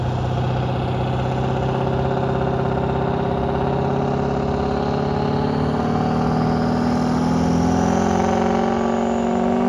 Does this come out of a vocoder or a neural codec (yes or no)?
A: no